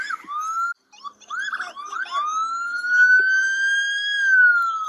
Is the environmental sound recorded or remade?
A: recorded